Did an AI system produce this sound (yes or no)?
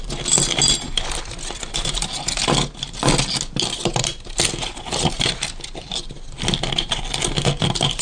no